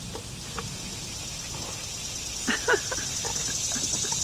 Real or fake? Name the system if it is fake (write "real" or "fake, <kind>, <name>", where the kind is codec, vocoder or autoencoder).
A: real